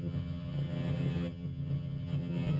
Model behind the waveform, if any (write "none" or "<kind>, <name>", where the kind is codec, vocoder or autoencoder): vocoder, HiFi-GAN